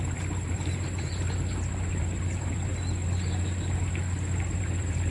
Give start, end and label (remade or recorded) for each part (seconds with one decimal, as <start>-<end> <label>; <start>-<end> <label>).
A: 0.0-2.7 remade; 2.7-4.6 recorded; 4.6-5.1 remade